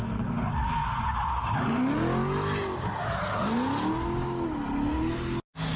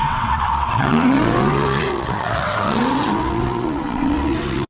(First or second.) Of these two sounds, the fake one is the second